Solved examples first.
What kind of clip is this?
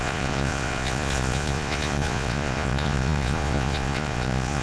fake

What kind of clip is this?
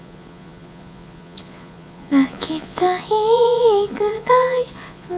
fake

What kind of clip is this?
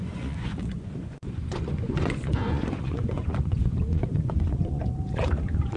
fake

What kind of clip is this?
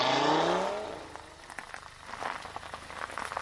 real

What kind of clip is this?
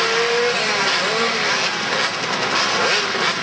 real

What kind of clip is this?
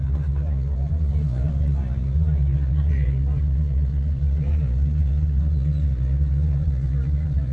fake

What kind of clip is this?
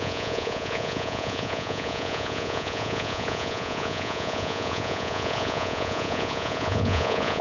fake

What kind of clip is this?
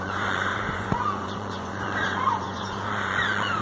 fake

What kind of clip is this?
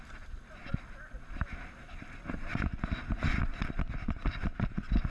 real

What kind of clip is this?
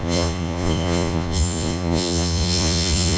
fake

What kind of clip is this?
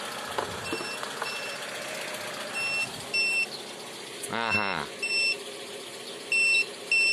real